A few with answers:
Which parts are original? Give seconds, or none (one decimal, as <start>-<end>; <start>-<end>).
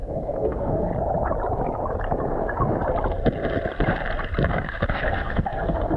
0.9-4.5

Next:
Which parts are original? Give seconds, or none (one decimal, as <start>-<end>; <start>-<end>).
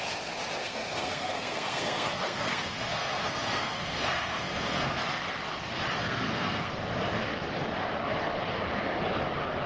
0.0-0.6; 5.0-6.0; 6.7-9.7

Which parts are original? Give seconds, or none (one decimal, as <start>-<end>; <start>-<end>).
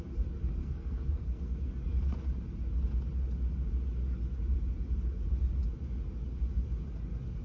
0.0-0.6; 1.7-7.4